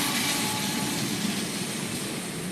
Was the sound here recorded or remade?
recorded